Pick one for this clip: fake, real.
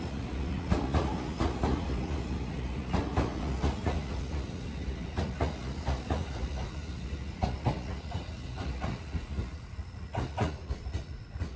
fake